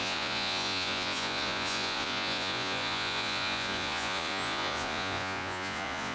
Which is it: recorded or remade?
remade